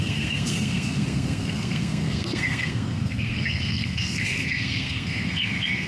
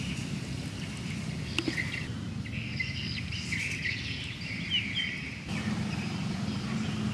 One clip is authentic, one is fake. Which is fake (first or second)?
first